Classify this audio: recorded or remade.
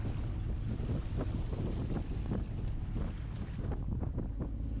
recorded